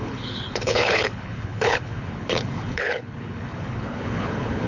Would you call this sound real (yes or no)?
no